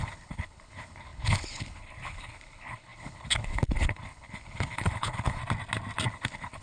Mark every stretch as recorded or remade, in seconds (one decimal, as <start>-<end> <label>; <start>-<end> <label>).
0.0-5.4 remade; 5.4-6.1 recorded; 6.1-6.6 remade